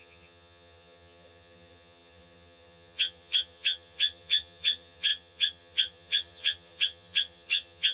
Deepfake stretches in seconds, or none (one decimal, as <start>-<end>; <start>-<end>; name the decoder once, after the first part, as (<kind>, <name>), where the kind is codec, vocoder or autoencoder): 0.0-7.9 (vocoder, HiFi-GAN)